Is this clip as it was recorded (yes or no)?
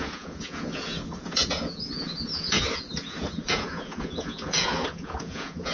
no